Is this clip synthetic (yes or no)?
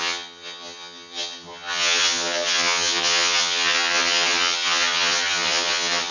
yes